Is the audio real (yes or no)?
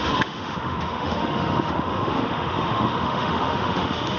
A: no